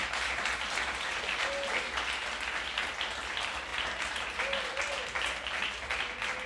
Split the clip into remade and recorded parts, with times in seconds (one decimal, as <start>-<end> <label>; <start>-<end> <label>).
0.0-3.7 recorded; 3.7-4.8 remade; 4.8-6.5 recorded